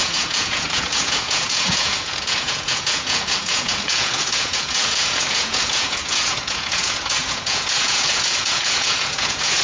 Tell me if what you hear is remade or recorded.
remade